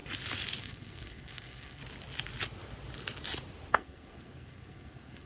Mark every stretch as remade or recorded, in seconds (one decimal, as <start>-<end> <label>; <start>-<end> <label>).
0.0-0.6 recorded; 0.6-1.8 remade; 1.8-3.7 recorded; 3.7-5.3 remade